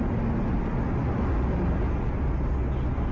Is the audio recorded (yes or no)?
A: yes